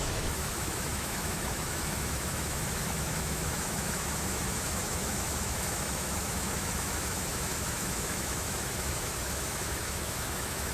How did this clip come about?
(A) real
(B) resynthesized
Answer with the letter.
B